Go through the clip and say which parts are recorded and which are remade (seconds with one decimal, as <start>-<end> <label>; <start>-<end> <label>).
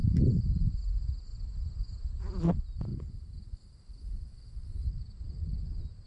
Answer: 0.0-0.5 remade; 0.5-2.9 recorded; 2.9-5.6 remade; 5.6-6.1 recorded